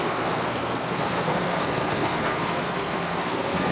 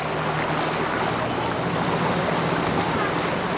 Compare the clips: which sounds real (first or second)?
second